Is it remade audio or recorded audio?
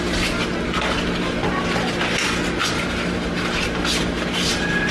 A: recorded